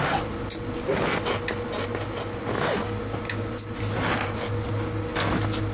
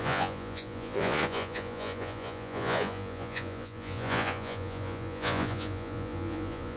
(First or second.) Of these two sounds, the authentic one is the first